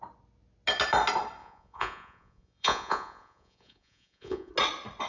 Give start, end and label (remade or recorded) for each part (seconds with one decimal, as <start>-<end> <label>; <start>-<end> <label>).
0.0-1.4 recorded; 1.4-4.5 remade; 4.5-5.1 recorded